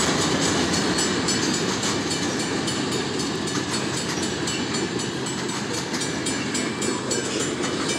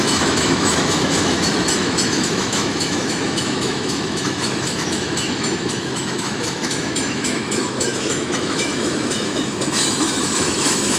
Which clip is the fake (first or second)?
second